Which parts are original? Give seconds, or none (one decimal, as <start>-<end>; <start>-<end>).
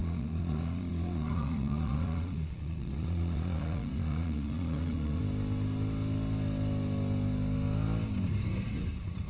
5.2-9.3